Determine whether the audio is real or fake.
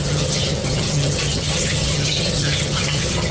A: fake